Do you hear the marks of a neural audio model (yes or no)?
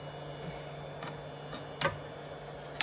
no